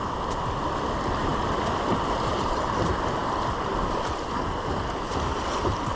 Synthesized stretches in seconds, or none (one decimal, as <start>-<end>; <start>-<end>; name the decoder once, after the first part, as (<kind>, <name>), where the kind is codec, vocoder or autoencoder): 0.0-1.3 (vocoder, BigVGAN v2); 2.2-3.2